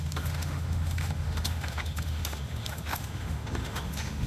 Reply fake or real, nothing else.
fake